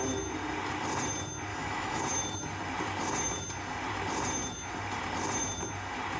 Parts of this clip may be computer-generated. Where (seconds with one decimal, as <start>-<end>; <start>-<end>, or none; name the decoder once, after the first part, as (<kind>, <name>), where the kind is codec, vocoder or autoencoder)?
1.5-2.0 (autoencoder, DAC-VAE)